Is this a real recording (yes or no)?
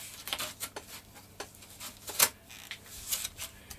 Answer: yes